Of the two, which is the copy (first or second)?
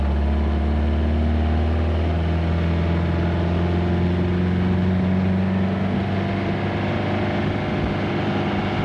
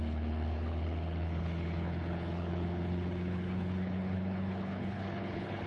second